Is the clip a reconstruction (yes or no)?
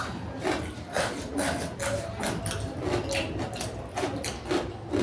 no